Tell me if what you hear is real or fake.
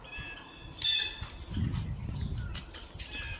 real